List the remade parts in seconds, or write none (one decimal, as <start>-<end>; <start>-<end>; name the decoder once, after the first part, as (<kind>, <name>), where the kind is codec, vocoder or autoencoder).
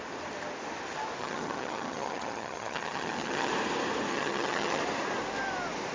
1.2-3.5 (vocoder, HiFi-GAN); 4.1-4.8